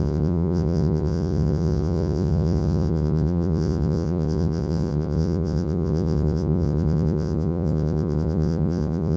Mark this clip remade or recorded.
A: remade